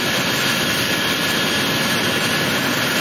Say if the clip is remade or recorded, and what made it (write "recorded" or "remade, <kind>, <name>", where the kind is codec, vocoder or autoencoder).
recorded